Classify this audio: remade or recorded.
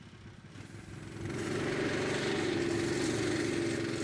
recorded